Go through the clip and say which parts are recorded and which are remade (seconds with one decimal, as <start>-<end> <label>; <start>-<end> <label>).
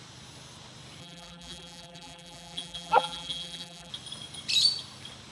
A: 0.0-1.0 recorded; 1.0-3.9 remade; 3.9-5.3 recorded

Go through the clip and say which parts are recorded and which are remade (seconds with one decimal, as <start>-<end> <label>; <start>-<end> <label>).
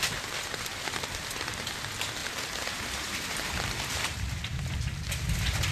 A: 0.0-2.2 recorded; 2.2-4.3 remade; 4.3-5.7 recorded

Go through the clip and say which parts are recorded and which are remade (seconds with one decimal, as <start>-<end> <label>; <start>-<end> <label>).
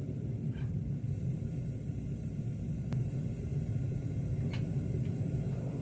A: 0.0-3.5 remade; 3.5-5.8 recorded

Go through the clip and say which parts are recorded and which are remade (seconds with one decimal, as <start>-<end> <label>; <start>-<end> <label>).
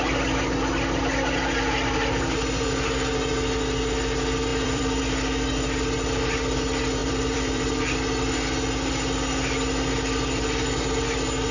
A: 0.0-4.5 recorded; 4.5-5.0 remade; 5.0-7.0 recorded; 7.0-7.8 remade; 7.8-11.5 recorded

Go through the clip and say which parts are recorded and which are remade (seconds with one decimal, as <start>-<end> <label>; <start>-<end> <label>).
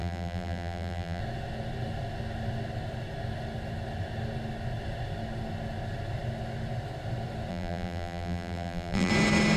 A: 0.0-1.2 remade; 1.2-7.5 recorded; 7.5-9.1 remade; 9.1-9.6 recorded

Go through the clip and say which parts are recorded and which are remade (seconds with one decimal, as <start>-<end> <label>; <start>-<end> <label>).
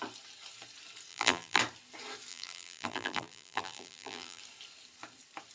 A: 0.0-1.1 recorded; 1.1-1.6 remade; 1.6-2.3 recorded; 2.3-4.4 remade; 4.4-5.5 recorded